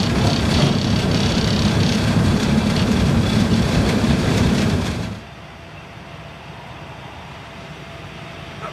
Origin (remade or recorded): remade